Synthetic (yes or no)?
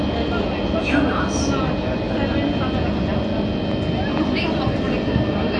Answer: no